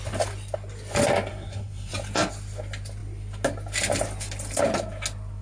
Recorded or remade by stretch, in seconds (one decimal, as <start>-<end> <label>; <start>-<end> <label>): 0.0-1.3 recorded; 1.3-1.9 remade; 1.9-5.4 recorded